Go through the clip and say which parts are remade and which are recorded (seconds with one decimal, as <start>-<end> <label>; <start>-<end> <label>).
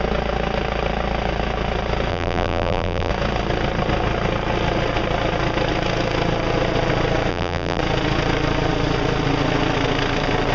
0.0-2.1 recorded; 2.1-3.1 remade; 3.1-7.3 recorded; 7.3-7.8 remade; 7.8-10.5 recorded